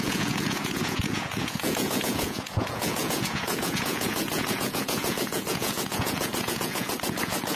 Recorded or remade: remade